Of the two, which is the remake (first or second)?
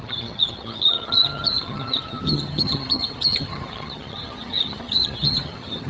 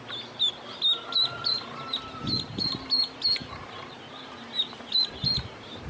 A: first